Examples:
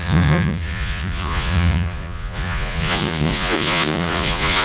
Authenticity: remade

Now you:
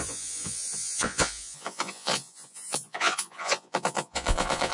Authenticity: remade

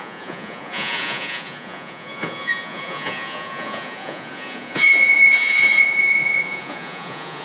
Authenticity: remade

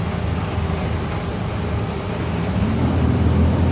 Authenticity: recorded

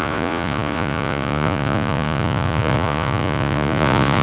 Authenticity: remade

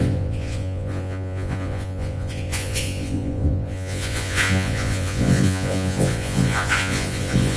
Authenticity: remade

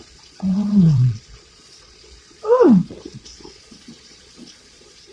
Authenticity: remade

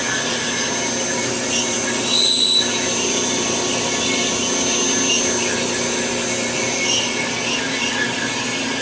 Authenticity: recorded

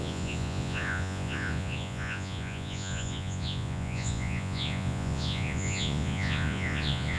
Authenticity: remade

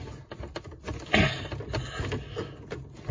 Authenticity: recorded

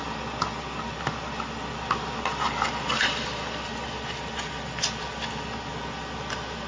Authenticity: recorded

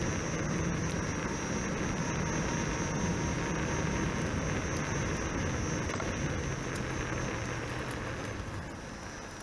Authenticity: recorded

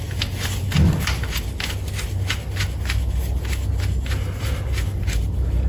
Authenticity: recorded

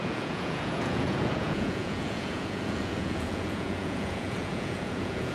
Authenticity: remade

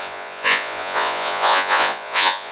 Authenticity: remade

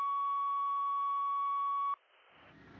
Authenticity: recorded